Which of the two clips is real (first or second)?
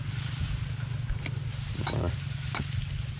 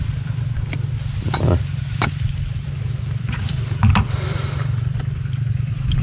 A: first